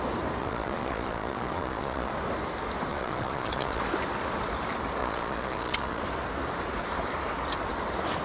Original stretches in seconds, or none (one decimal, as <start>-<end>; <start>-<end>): 0.0-0.4; 2.1-2.9; 3.8-5.0; 6.0-8.2